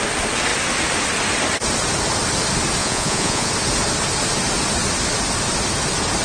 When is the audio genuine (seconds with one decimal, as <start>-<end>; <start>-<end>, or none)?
0.0-2.8; 3.5-6.2